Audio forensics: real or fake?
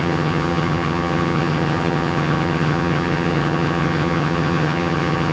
fake